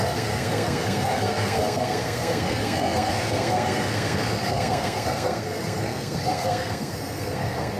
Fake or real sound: fake